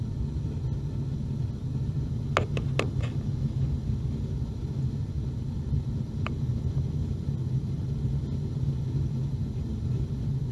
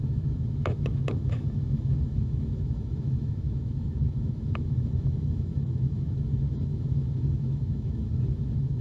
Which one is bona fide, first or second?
first